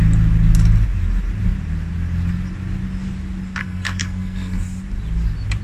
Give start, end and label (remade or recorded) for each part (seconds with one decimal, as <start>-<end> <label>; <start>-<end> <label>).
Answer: 0.0-3.6 recorded; 3.6-4.6 remade; 4.6-5.6 recorded